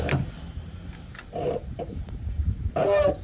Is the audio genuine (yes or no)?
no